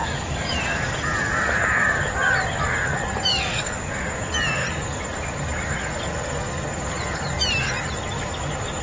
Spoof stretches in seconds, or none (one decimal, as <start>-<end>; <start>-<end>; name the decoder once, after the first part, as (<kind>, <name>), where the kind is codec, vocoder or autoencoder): 0.0-0.9 (codec, DAC); 3.3-3.9